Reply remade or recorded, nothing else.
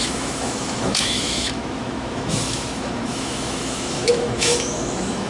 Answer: remade